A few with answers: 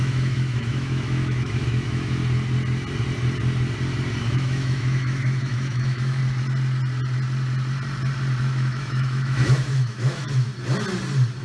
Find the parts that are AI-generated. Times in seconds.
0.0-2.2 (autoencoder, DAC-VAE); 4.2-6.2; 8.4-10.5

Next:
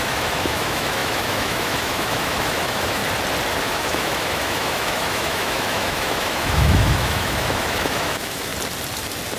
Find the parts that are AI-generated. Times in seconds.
0.0-3.0 (autoencoder, DAC-VAE); 3.6-8.5

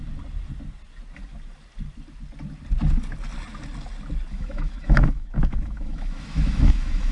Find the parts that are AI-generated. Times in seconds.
4.3-7.1 (autoencoder, DAC-VAE)

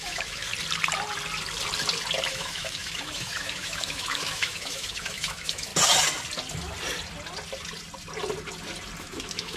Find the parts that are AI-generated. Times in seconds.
0.0-0.5 (autoencoder, DAC-VAE); 2.3-5.7; 9.0-9.6

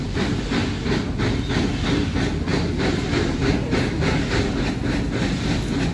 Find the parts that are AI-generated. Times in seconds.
none